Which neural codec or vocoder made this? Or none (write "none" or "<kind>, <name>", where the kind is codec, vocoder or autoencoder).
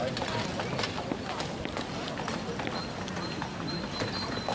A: none